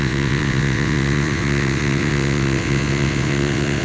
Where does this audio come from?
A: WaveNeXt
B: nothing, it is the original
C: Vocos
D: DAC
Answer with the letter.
A